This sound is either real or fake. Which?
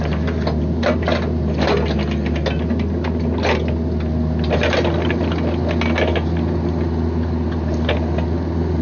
real